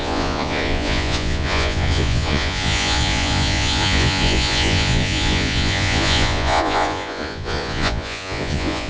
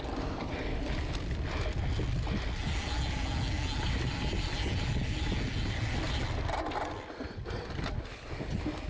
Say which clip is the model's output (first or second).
first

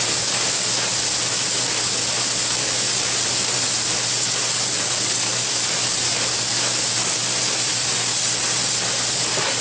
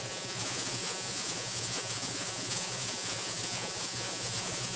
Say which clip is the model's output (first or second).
second